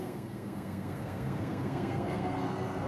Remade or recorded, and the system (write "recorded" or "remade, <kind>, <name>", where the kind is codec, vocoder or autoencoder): remade, codec, SNAC